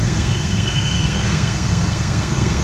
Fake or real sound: fake